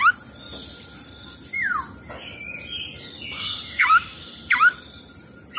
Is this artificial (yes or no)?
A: yes